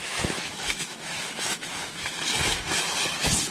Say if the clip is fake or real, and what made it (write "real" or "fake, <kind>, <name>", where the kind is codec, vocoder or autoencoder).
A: fake, autoencoder, DAC-VAE